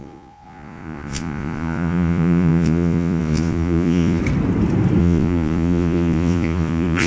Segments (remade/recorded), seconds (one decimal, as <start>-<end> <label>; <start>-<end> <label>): 0.0-4.2 remade; 4.2-5.0 recorded; 5.0-7.1 remade